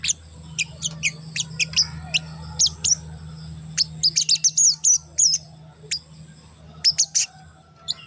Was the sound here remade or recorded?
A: recorded